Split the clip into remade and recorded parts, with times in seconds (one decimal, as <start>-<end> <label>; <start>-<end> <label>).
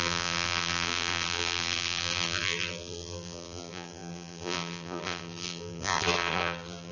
0.0-6.9 remade